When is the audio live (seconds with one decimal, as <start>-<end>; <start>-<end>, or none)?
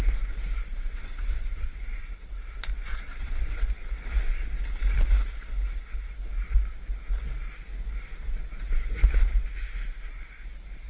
0.0-0.7; 2.5-2.9; 3.7-10.9